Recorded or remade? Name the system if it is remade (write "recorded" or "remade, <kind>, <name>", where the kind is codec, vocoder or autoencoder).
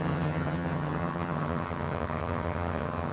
remade, vocoder, HiFi-GAN